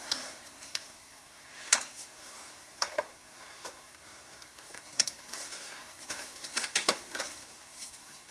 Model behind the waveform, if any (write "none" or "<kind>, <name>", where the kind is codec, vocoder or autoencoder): codec, SNAC